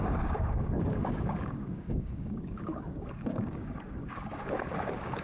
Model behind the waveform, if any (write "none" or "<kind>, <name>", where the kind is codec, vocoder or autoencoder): codec, DAC